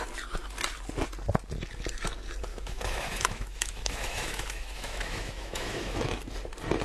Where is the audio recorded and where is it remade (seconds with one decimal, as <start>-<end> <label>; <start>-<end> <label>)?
0.0-2.5 recorded; 2.5-6.1 remade; 6.1-6.8 recorded